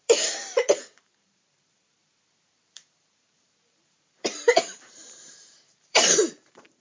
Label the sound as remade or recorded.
remade